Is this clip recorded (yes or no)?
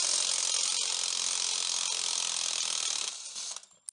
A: yes